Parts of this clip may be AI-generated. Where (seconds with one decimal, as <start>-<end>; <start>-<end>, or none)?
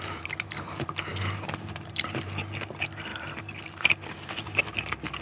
3.1-4.6